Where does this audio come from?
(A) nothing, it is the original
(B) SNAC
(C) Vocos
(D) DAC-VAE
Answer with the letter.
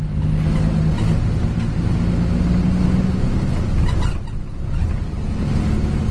A